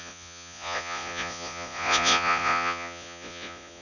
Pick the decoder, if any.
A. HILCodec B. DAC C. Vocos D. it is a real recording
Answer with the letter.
C